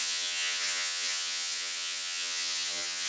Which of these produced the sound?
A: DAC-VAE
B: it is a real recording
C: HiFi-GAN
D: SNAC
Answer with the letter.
C